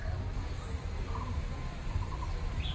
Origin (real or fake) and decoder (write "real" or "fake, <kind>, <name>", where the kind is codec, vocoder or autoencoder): real